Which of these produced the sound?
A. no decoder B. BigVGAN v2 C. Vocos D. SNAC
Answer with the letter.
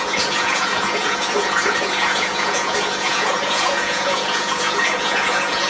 C